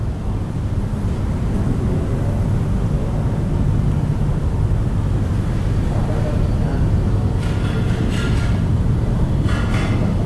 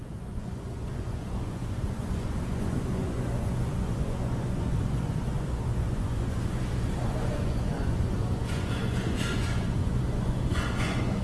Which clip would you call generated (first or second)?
second